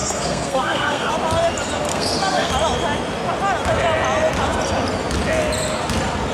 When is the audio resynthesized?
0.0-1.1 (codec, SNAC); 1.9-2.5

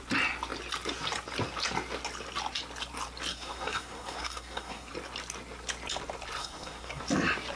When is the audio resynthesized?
3.3-4.9 (codec, SNAC); 6.4-7.0

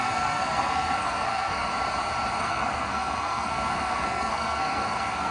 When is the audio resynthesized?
0.0-1.7 (codec, SNAC); 2.4-5.3

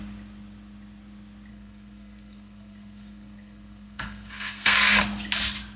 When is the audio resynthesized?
1.5-5.0 (codec, SNAC)

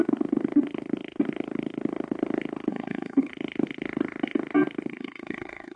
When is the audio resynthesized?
2.7-3.3 (codec, SNAC); 4.9-5.8

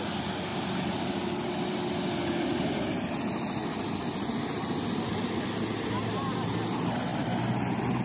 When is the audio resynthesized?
none

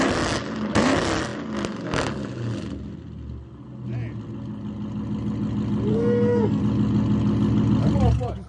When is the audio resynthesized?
5.9-6.6 (codec, SNAC)